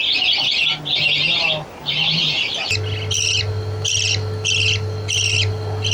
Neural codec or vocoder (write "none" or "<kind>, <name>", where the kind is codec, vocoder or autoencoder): none